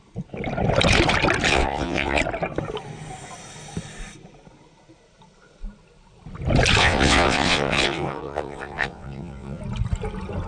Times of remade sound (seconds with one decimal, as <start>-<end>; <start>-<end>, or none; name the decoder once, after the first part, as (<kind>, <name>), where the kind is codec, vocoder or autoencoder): 1.5-2.2 (vocoder, WaveNeXt); 6.8-9.6